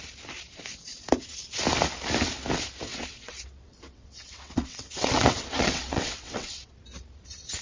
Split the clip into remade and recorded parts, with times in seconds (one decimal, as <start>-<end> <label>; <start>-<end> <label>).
0.0-2.9 recorded; 2.9-6.7 remade; 6.7-7.6 recorded